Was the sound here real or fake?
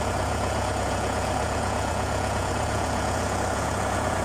fake